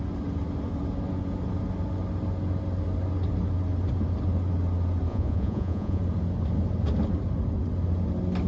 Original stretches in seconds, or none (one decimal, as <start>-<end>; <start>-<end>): 0.0-5.1; 6.0-8.5